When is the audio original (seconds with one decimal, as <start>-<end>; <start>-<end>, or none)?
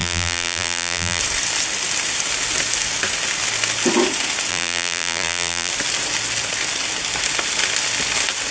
1.2-4.5; 5.7-8.5